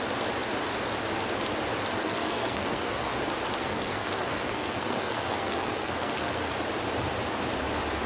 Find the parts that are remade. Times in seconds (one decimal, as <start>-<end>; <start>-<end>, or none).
2.0-3.1; 3.6-6.5